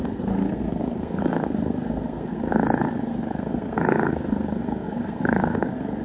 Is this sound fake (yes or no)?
yes